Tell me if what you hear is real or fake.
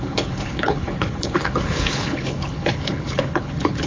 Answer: fake